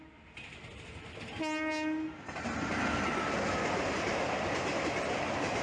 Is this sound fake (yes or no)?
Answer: no